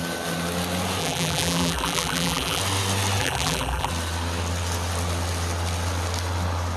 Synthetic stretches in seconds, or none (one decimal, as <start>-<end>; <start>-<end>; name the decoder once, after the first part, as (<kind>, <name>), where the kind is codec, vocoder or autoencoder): 1.0-2.6 (vocoder, BigVGAN v2); 3.2-3.9